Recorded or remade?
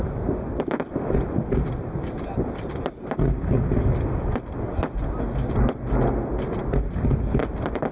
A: recorded